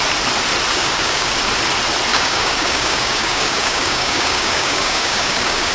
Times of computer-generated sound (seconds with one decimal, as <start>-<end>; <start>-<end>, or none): 0.7-1.3; 2.1-5.7